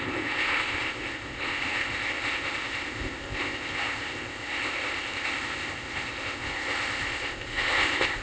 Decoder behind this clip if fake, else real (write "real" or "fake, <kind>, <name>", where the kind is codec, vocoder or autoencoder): fake, codec, ZipCodec